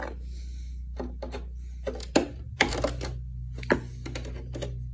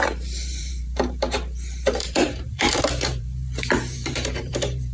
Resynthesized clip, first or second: second